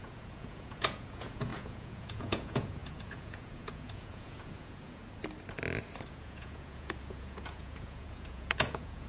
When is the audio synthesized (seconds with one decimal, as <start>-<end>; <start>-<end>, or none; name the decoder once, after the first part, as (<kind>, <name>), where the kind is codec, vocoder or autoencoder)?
0.0-5.0 (vocoder, Vocos); 6.1-9.1

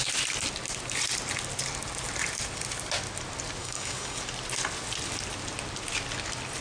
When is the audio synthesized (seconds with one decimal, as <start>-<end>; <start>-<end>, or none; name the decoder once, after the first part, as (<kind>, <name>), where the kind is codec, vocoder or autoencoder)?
3.6-4.2 (codec, DAC)

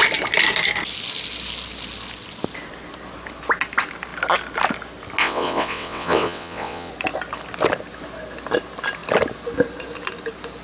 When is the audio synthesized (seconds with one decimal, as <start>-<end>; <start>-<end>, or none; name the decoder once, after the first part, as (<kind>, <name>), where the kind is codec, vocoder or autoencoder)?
5.2-6.9 (vocoder, WaveNeXt)

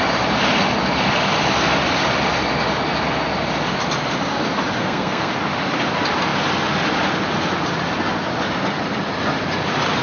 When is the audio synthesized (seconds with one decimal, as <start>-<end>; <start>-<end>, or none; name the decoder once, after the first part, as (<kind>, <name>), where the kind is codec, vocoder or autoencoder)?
4.8-5.3 (codec, SNAC)

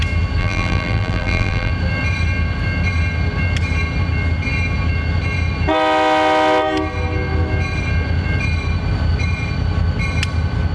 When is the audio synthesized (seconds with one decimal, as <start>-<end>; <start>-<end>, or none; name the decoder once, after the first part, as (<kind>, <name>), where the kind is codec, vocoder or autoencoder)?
0.4-1.7 (vocoder, BigVGAN v2)